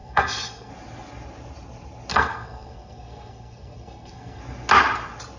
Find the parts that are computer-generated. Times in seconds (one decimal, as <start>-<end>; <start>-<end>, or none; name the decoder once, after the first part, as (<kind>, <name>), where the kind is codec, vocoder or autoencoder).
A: 0.0-0.7 (codec, SNAC); 2.1-4.4

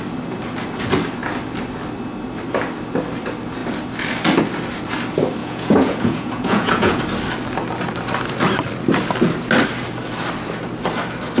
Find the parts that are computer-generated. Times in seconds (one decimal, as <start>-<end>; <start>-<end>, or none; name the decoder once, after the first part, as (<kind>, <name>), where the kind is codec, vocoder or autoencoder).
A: 5.4-7.0 (vocoder, Vocos)

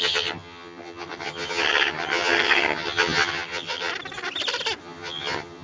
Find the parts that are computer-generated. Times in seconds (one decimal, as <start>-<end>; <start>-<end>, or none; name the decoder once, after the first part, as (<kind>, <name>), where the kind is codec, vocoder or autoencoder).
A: 0.0-3.9 (vocoder, HiFi-GAN); 4.8-5.6

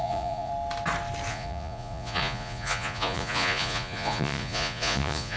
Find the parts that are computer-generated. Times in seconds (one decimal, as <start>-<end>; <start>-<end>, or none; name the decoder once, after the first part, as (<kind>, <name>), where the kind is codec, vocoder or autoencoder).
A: 0.0-0.5 (vocoder, Vocos); 1.3-5.4

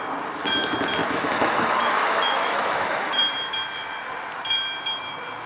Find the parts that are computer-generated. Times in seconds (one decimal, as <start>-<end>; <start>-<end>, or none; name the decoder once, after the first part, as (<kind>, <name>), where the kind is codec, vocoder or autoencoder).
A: 1.0-3.2 (autoencoder, DAC-VAE)

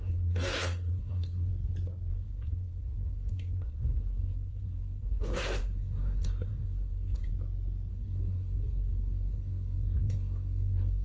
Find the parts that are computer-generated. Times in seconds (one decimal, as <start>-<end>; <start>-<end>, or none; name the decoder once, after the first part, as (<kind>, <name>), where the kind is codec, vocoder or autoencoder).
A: 0.0-1.5 (codec, SNAC); 2.1-7.3; 7.9-11.0